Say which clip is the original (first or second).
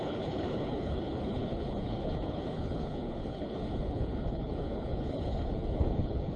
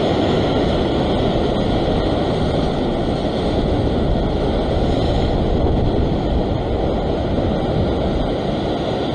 second